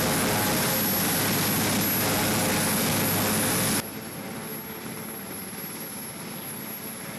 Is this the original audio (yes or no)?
yes